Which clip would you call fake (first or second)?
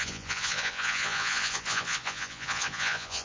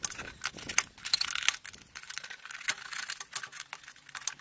first